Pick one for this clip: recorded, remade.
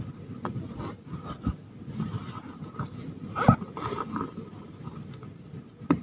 recorded